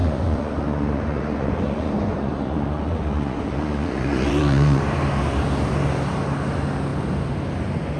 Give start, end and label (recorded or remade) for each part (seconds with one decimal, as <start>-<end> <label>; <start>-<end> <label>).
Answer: 0.0-4.8 remade; 4.8-8.0 recorded